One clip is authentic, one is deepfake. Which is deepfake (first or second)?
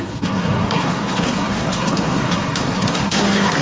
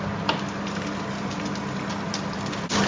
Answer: first